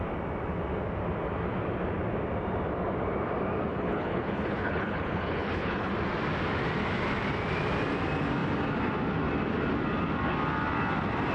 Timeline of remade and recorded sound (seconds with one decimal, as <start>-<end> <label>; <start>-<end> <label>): 0.0-3.7 recorded; 3.7-5.9 remade; 5.9-11.3 recorded